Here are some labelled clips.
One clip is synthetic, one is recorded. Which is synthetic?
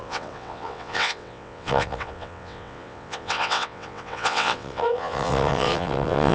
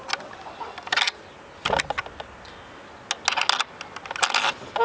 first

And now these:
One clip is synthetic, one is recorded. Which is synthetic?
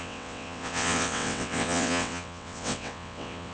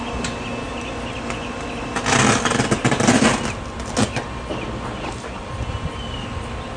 first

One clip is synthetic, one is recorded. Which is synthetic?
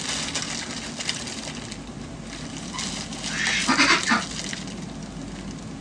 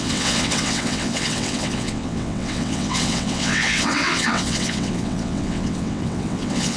second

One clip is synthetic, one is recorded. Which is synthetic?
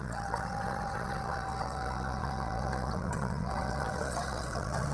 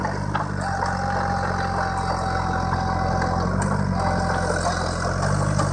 first